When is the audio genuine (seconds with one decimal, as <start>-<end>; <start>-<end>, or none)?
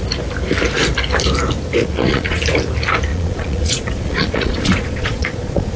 0.0-1.8; 2.4-3.1